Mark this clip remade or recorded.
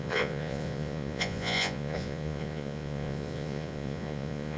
remade